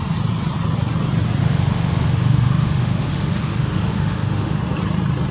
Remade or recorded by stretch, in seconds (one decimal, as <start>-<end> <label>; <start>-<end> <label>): 0.0-1.4 recorded; 1.4-4.6 remade; 4.6-5.3 recorded